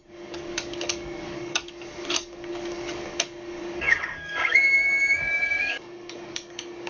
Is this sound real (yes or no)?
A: no